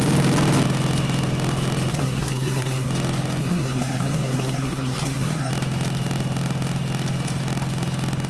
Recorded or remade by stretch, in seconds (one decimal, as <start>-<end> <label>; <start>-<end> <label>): 0.0-1.9 recorded; 1.9-2.9 remade; 2.9-3.4 recorded; 3.4-5.5 remade; 5.5-8.3 recorded